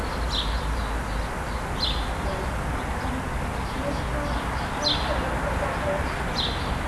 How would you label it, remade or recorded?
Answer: recorded